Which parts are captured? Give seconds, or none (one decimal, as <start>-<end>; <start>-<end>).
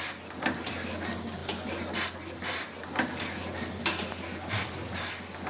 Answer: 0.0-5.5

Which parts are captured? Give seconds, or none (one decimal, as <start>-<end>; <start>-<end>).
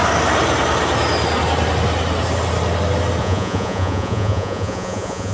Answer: 0.0-3.2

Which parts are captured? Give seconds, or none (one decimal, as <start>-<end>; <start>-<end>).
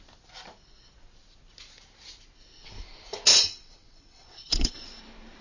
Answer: 0.0-3.3; 5.0-5.4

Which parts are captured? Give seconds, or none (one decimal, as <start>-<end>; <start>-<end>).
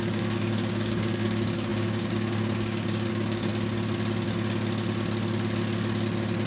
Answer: 3.5-6.5